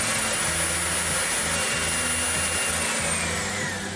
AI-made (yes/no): no